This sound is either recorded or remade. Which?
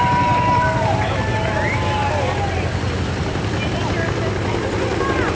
recorded